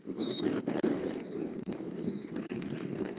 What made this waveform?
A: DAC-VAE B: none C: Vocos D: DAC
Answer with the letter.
D